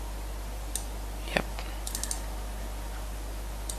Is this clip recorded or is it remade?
recorded